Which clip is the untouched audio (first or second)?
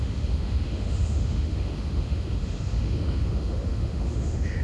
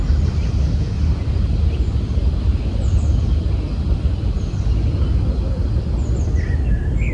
second